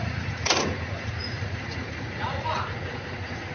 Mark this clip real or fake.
fake